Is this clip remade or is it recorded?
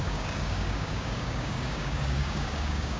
remade